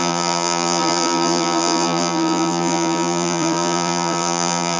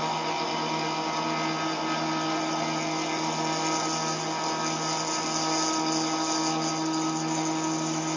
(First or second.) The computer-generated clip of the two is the first